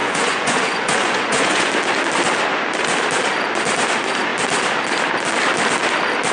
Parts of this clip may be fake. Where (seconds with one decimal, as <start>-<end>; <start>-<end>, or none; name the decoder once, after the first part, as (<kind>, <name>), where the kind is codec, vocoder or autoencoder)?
0.0-1.7 (vocoder, Vocos)